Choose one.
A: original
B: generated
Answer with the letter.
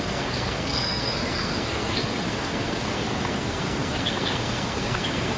B